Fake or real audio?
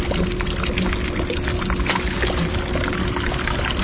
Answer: real